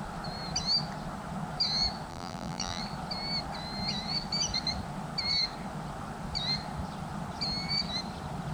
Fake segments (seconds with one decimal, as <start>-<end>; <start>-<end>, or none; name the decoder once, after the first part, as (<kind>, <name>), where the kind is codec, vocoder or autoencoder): 2.1-2.8 (vocoder, BigVGAN v2)